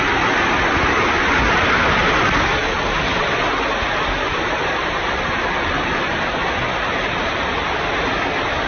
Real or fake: real